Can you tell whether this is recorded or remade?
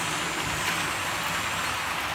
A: recorded